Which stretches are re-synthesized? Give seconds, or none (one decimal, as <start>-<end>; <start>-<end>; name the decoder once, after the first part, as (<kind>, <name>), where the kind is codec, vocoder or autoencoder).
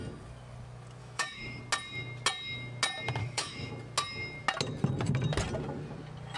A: 1.0-1.6 (autoencoder, DAC-VAE); 3.2-3.7